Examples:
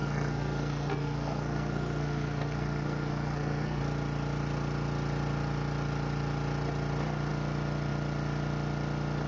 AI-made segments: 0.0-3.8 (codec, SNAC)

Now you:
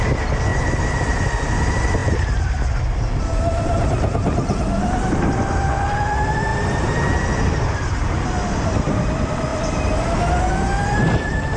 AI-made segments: none

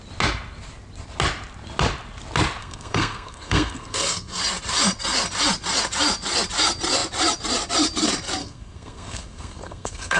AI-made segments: 2.6-4.4 (codec, SNAC); 8.4-10.2

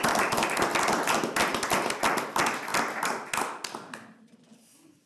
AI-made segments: none

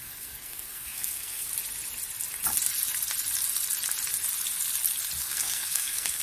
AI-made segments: 0.0-1.5 (codec, SNAC); 5.2-6.2

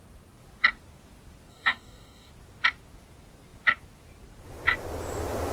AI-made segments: 1.5-2.3 (codec, DAC)

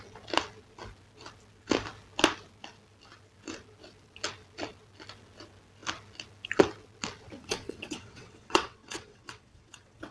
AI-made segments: 7.4-10.1 (vocoder, WaveNeXt)